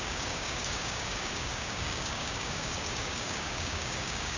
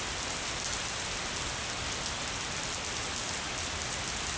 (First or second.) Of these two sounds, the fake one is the first